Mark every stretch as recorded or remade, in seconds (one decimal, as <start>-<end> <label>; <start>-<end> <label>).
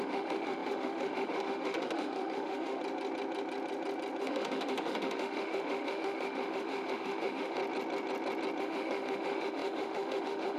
0.0-2.8 remade; 2.8-4.2 recorded; 4.2-7.6 remade; 7.6-8.6 recorded; 8.6-10.6 remade